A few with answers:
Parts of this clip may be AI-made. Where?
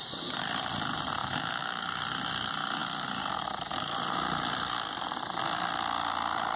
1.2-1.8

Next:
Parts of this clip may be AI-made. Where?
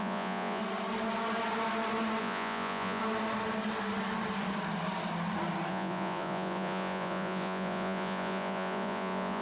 0.0-0.6; 2.2-3.0; 5.7-9.4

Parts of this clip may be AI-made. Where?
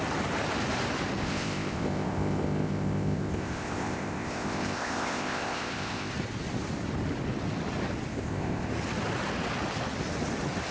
1.2-6.1; 8.1-8.7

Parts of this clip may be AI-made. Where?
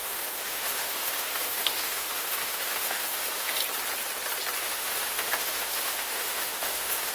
0.0-3.6; 4.6-7.1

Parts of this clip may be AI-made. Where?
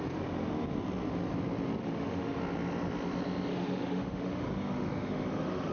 1.8-2.4; 3.5-5.7